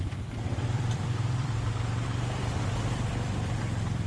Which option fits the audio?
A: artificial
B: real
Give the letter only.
A